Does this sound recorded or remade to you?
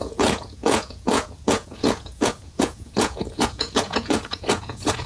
remade